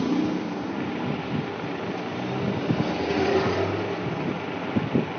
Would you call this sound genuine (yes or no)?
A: yes